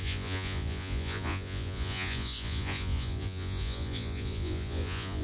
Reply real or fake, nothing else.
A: fake